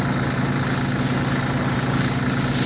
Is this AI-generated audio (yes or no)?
no